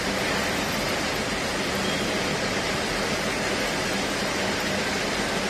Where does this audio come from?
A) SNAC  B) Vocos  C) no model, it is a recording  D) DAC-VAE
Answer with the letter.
C